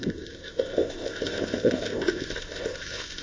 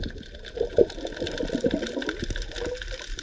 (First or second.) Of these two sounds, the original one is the second